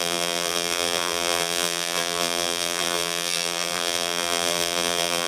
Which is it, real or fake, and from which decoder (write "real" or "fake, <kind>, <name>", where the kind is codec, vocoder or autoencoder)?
fake, vocoder, BigVGAN v2